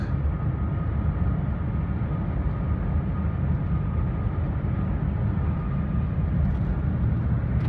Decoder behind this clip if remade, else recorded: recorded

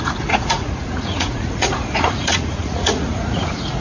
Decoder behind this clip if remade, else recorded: remade, vocoder, Vocos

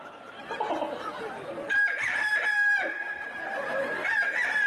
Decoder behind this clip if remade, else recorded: remade, vocoder, BigVGAN v2